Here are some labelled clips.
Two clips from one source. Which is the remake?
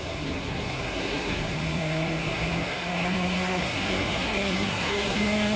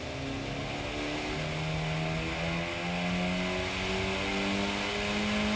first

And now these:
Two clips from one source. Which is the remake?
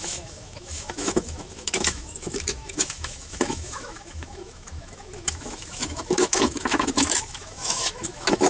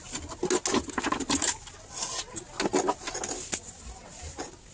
first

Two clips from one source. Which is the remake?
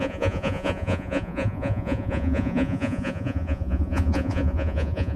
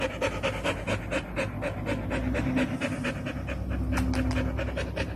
first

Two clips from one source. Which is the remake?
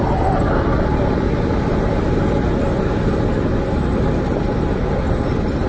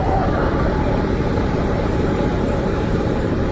second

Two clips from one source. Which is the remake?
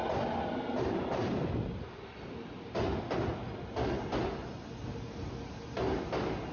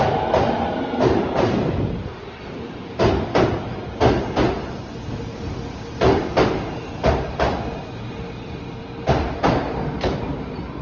second